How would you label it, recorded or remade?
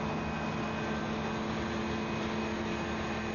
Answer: recorded